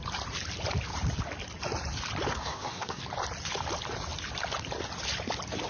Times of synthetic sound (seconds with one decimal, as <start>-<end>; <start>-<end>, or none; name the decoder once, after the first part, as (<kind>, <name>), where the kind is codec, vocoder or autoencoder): 2.3-3.0 (codec, SNAC)